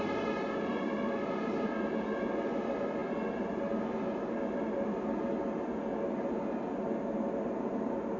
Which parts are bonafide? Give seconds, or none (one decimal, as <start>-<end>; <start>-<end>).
0.0-8.2